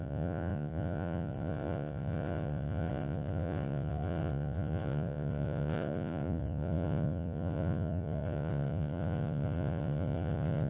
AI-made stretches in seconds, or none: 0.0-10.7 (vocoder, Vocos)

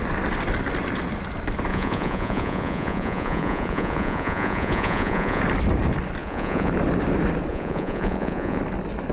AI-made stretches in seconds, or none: 1.7-5.4 (vocoder, Vocos); 6.2-6.7; 7.5-8.6

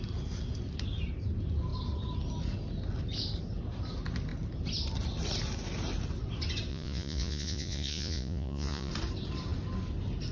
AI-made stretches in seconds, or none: 6.7-8.9 (vocoder, Vocos)

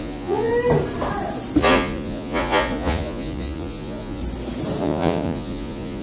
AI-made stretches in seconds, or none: 0.0-0.5 (vocoder, Vocos); 1.6-4.2; 4.8-6.0

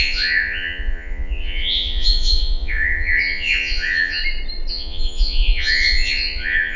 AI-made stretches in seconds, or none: 0.0-4.2 (vocoder, Vocos); 4.7-6.8

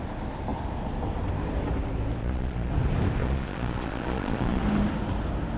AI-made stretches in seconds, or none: 2.2-2.7 (vocoder, Vocos); 3.2-4.6